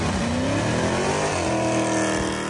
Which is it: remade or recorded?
recorded